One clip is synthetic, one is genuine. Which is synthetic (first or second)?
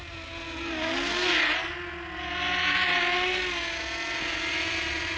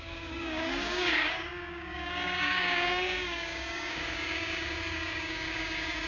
second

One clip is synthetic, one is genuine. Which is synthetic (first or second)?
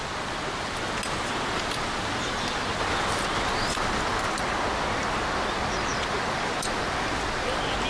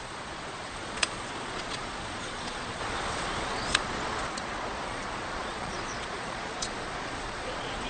second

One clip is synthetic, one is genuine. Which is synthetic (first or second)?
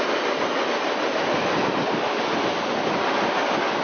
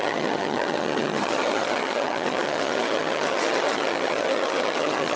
second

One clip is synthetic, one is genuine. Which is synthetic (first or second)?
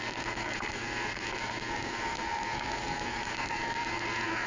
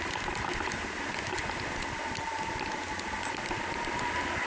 first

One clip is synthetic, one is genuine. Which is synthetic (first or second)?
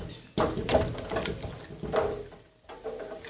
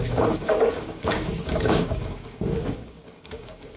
second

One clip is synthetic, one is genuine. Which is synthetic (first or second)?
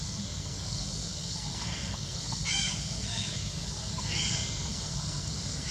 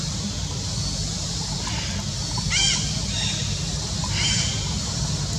first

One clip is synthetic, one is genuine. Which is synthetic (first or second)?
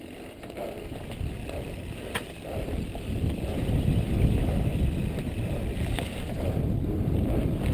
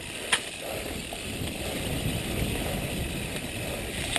first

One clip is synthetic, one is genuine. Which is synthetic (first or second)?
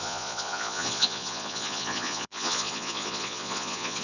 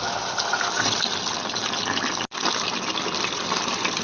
first